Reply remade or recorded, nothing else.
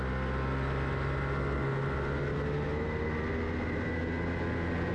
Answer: recorded